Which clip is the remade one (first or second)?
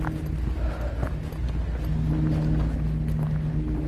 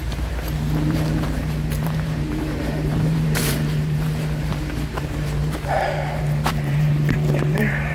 second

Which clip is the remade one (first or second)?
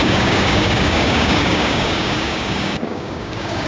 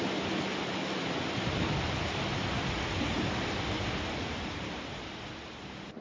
first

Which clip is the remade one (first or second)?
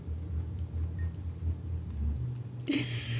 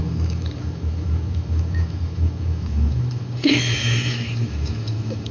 second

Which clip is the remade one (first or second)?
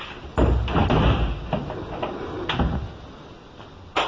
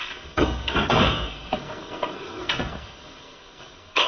second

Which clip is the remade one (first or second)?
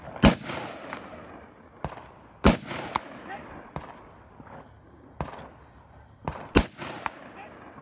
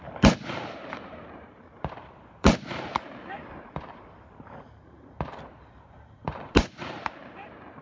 second